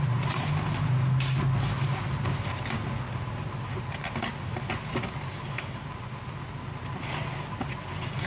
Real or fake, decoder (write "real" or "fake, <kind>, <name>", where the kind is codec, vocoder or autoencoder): real